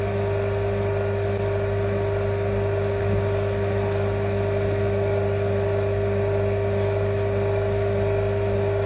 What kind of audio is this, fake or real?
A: real